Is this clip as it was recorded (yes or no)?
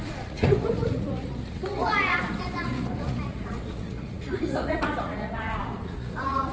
no